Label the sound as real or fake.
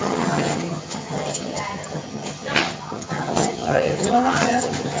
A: fake